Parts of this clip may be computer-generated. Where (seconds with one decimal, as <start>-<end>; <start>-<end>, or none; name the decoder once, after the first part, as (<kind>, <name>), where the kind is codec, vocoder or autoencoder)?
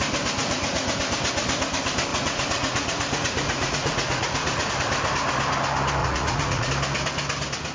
0.4-1.0 (vocoder, Vocos); 2.1-4.7; 6.0-6.7